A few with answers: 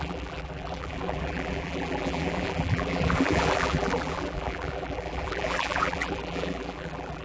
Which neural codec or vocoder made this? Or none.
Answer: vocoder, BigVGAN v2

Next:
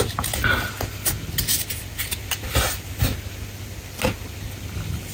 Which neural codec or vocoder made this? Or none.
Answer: none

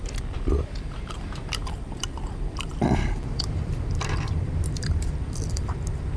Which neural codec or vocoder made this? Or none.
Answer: vocoder, BigVGAN v2